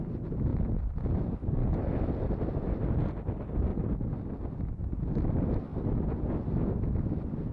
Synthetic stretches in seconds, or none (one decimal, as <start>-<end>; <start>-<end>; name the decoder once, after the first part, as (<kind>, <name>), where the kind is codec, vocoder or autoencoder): none